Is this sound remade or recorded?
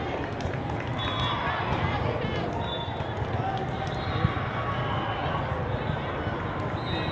recorded